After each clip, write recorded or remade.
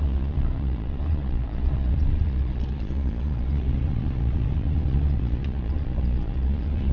remade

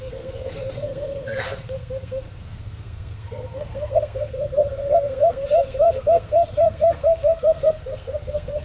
remade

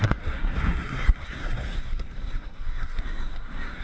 remade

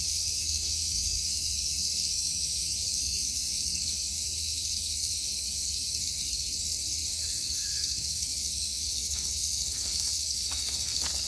remade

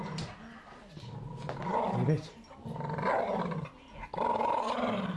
recorded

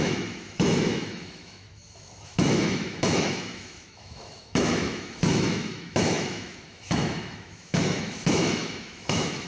remade